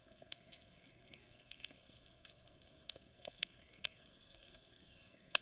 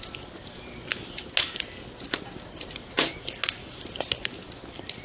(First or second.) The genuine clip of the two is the second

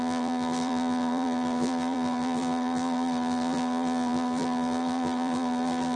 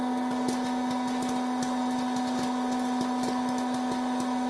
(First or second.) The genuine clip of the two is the second